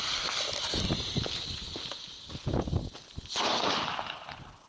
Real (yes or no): yes